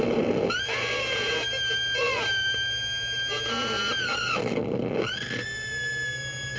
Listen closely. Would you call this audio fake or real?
real